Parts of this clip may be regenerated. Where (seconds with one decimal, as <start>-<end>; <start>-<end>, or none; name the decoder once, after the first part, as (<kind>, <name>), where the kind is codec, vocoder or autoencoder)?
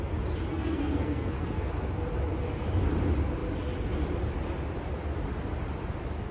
0.5-1.7 (codec, SNAC)